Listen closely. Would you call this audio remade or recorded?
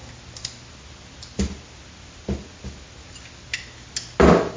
recorded